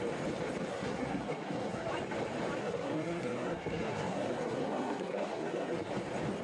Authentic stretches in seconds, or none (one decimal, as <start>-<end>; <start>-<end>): 0.0-0.7; 1.9-2.6; 5.9-6.4